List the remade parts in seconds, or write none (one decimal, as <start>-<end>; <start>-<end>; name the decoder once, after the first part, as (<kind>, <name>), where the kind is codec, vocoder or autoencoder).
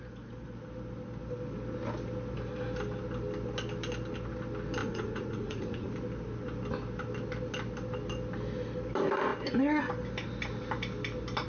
4.8-5.9 (vocoder, Vocos)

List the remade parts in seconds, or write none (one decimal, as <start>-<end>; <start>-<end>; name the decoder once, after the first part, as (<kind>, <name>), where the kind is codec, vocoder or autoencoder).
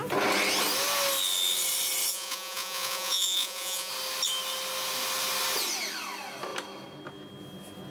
2.1-3.9 (vocoder, Vocos)